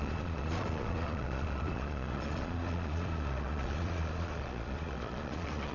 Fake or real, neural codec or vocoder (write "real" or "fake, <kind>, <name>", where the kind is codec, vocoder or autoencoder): fake, vocoder, Vocos